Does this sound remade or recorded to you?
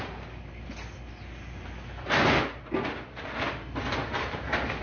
recorded